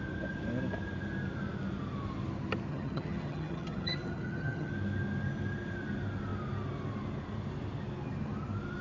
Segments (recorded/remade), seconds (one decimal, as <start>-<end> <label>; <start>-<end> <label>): 0.0-2.7 recorded; 2.7-4.7 remade; 4.7-8.8 recorded